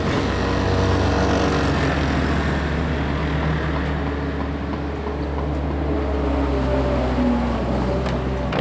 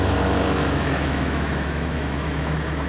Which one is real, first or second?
first